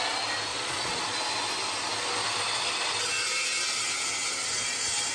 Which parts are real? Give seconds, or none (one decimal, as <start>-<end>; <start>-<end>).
0.0-0.5; 1.0-5.1